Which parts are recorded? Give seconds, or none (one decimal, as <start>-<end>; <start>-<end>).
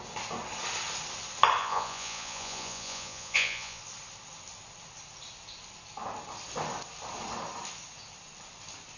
0.0-1.6; 3.8-9.0